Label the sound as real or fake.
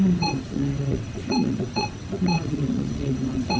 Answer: fake